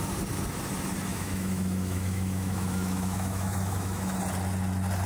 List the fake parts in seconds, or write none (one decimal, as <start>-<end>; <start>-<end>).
1.1-4.2